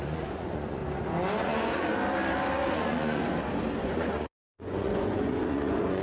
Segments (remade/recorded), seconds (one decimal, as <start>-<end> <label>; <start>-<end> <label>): 0.0-0.8 remade; 0.8-1.4 recorded; 1.4-1.9 remade; 1.9-2.7 recorded; 2.7-3.2 remade; 3.2-3.8 recorded; 3.8-6.0 remade